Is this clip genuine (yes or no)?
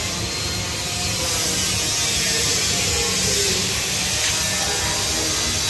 yes